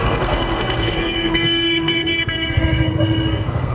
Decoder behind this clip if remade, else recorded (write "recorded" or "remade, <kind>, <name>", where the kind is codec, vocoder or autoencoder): remade, codec, SNAC